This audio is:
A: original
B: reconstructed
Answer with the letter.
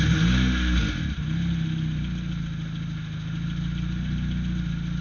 A